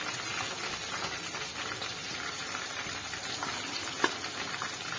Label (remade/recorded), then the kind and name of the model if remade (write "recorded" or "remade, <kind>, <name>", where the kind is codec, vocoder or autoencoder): recorded